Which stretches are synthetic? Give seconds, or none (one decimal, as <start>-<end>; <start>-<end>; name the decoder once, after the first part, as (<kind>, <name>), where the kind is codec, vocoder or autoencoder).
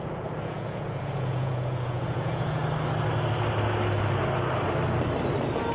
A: 0.0-2.6 (vocoder, Vocos)